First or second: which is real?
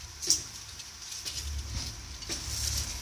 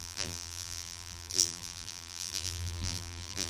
first